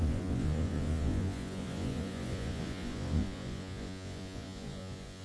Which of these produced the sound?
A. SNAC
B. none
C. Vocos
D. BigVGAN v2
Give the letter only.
C